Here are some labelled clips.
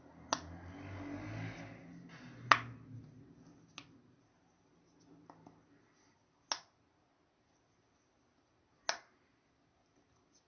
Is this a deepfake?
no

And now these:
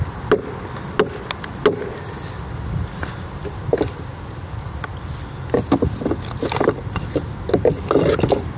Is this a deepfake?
no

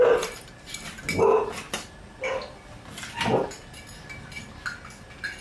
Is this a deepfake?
no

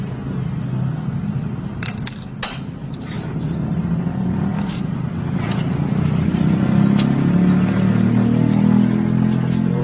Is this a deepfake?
no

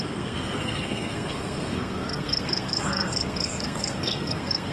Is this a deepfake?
yes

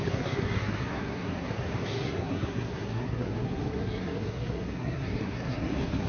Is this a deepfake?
yes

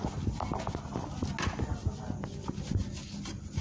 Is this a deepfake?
no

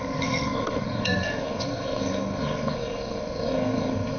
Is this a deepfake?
yes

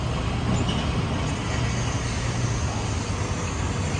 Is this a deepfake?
no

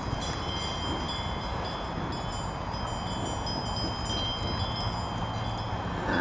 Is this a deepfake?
no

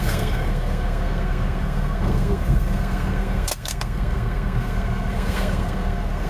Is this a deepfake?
yes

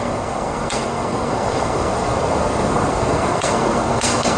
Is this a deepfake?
yes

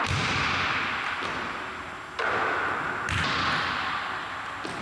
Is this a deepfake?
no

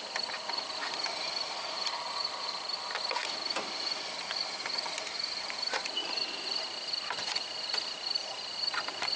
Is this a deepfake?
no